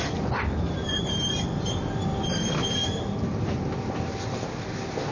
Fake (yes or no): no